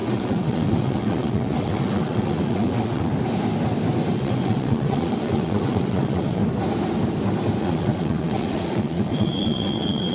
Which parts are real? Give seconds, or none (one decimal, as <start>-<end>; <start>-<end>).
3.1-4.1; 6.4-7.6